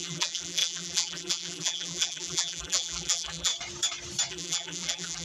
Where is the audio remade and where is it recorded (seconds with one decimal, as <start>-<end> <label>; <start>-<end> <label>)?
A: 0.0-3.5 remade; 3.5-4.3 recorded; 4.3-5.2 remade